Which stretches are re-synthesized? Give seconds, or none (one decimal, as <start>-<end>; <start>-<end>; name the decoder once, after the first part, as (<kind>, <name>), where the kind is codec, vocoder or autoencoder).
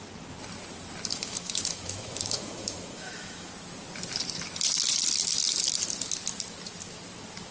1.1-3.5 (autoencoder, DAC-VAE)